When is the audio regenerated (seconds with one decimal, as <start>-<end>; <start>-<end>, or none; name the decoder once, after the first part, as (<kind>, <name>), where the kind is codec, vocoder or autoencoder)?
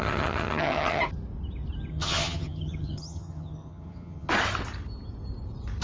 0.0-1.0 (vocoder, HiFi-GAN); 1.9-4.3